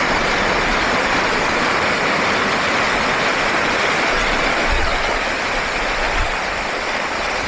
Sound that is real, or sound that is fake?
real